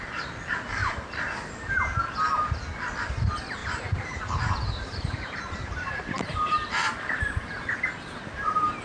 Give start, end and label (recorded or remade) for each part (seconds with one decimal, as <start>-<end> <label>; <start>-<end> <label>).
0.0-0.8 recorded; 0.8-1.3 remade; 1.3-3.6 recorded; 3.6-7.6 remade; 7.6-8.8 recorded